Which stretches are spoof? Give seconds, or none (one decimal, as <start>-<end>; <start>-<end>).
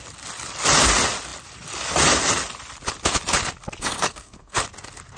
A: 3.8-4.6